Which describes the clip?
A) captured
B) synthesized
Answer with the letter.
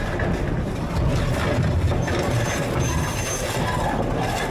A